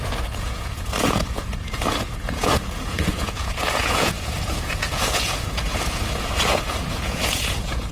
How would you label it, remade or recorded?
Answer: remade